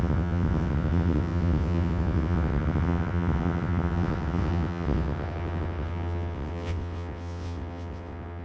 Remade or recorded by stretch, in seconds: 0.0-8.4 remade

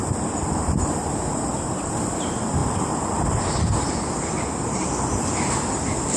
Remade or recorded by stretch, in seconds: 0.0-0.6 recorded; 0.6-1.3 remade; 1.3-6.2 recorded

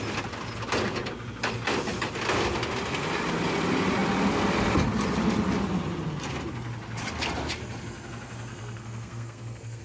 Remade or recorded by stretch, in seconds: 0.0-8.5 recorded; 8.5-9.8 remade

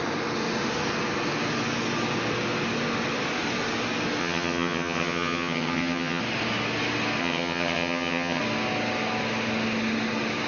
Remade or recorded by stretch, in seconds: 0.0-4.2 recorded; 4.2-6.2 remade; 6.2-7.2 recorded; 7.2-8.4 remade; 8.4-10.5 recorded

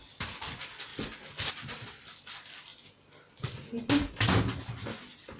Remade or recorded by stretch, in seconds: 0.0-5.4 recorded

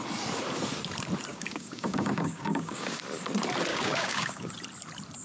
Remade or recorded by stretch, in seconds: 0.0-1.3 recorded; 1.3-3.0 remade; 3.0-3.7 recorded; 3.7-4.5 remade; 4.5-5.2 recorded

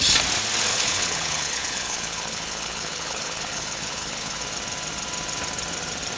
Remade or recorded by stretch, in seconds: 0.0-0.7 recorded; 0.7-4.4 remade; 4.4-6.2 recorded